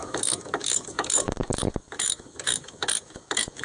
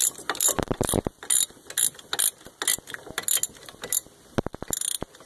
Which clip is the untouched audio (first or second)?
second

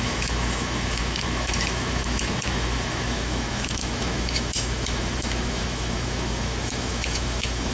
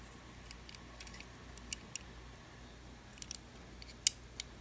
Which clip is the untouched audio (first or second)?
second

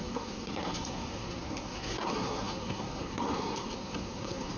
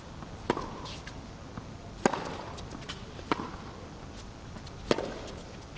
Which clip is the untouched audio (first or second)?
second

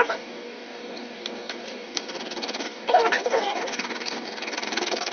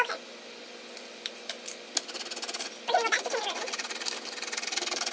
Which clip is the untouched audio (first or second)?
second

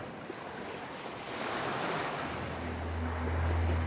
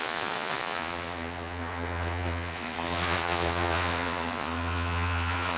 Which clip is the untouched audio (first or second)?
first